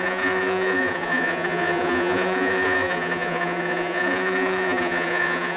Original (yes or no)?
no